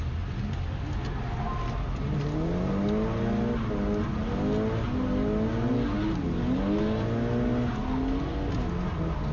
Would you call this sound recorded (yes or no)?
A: yes